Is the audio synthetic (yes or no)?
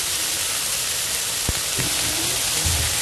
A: no